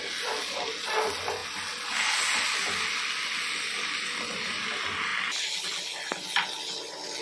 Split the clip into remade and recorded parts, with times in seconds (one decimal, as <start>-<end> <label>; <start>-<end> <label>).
0.0-7.2 recorded